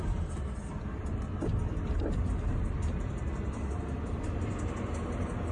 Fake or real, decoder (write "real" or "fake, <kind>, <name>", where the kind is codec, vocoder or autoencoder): real